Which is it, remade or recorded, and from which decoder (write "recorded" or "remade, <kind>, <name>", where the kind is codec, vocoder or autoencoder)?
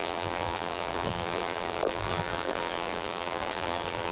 remade, vocoder, BigVGAN v2